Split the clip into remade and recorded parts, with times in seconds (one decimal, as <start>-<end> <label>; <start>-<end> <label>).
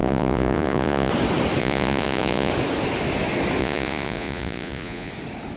0.0-1.1 remade; 1.1-1.6 recorded; 1.6-2.5 remade; 2.5-3.6 recorded; 3.6-5.1 remade; 5.1-5.6 recorded